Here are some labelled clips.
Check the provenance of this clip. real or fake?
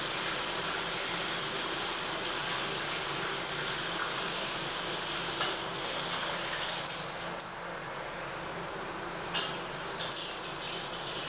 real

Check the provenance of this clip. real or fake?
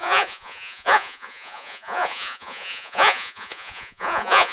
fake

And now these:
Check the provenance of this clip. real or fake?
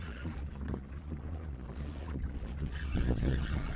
fake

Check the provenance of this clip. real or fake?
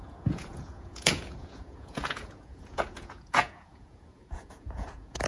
fake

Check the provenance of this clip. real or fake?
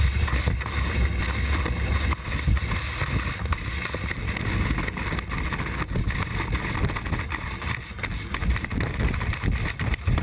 real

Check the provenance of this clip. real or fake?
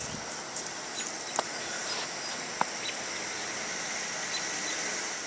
real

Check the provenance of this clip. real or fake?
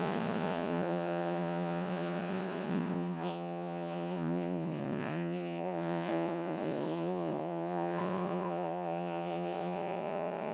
fake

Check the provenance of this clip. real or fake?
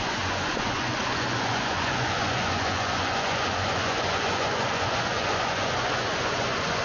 fake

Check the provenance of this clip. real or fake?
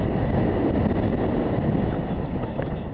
real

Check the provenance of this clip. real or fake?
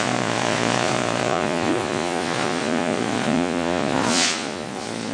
fake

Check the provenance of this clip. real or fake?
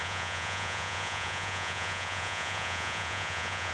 fake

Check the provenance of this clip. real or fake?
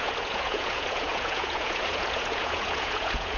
fake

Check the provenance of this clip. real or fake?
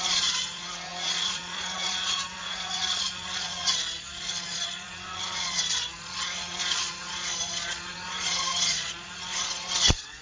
fake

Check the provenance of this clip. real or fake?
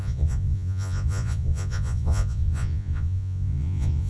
fake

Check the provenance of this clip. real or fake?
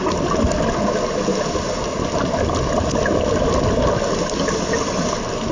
real